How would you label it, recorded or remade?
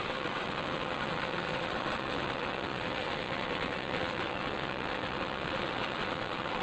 remade